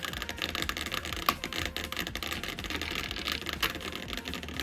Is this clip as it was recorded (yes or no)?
yes